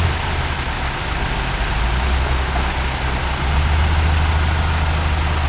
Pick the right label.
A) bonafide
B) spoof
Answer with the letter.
A